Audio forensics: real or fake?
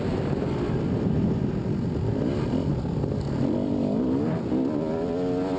real